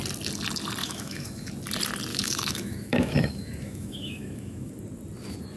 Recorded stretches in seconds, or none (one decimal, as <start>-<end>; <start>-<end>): 0.0-0.8; 1.5-2.1; 4.7-5.6